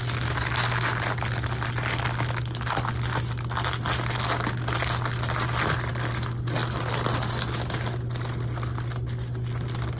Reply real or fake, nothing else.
real